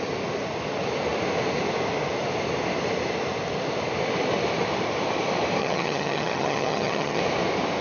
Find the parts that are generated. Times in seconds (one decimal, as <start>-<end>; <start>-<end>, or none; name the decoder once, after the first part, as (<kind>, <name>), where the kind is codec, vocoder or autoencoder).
5.6-7.2 (vocoder, HiFi-GAN)